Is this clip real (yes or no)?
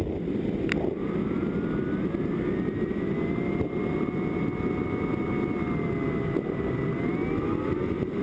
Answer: yes